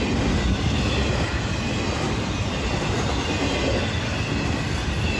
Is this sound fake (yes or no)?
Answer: no